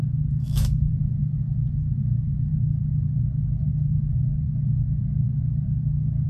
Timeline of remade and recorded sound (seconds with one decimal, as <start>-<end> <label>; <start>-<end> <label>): 0.0-0.9 remade; 0.9-2.0 recorded; 2.0-2.5 remade; 2.5-6.3 recorded